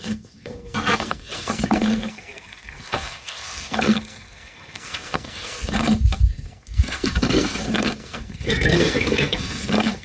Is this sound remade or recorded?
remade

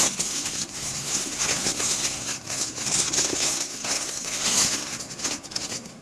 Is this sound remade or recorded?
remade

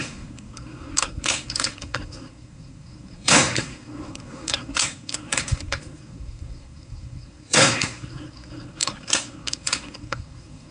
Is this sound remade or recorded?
remade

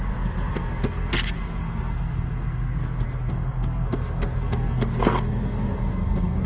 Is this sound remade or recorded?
remade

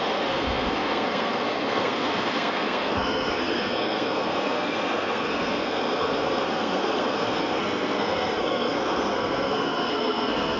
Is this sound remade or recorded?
remade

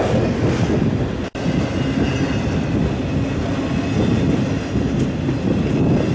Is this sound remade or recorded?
recorded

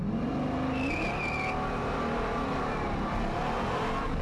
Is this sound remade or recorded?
recorded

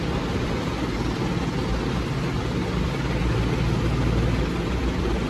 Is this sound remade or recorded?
recorded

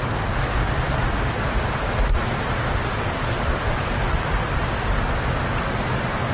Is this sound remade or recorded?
recorded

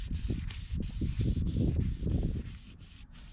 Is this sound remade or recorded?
recorded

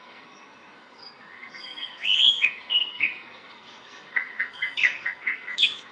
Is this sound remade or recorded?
remade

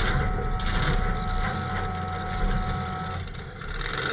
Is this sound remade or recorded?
recorded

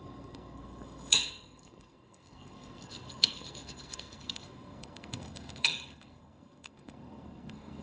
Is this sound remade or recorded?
remade